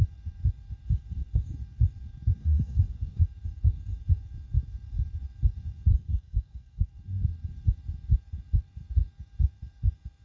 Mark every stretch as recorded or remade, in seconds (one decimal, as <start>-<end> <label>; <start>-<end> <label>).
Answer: 0.0-2.4 recorded; 2.4-3.2 remade; 3.2-6.1 recorded; 6.1-6.9 remade; 6.9-10.2 recorded